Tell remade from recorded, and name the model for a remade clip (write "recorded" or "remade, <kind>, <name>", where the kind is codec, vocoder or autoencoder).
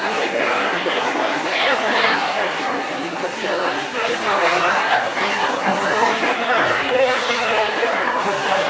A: remade, codec, SNAC